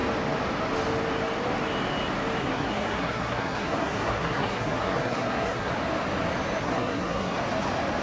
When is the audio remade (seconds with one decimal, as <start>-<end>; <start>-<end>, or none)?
2.4-5.7; 6.6-7.4

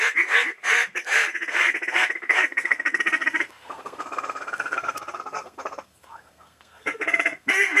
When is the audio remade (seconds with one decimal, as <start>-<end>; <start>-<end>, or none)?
0.0-7.8

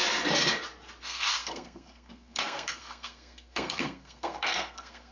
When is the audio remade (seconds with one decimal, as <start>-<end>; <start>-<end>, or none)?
1.0-5.1

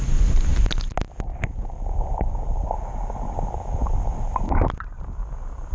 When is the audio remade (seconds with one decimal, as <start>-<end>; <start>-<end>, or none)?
none

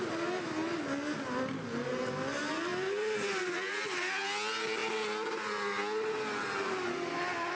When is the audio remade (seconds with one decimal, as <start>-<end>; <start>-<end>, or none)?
none

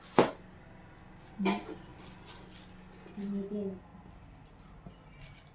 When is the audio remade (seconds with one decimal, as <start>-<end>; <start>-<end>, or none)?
none

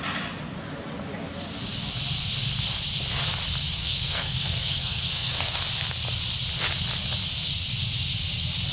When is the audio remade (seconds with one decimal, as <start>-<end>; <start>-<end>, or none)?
3.8-5.6

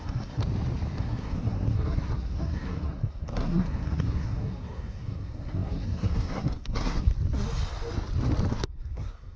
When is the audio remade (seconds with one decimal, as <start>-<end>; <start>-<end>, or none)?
0.0-0.4; 1.0-7.1; 8.5-9.4